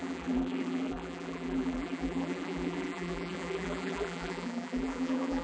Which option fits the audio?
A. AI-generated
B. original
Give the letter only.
A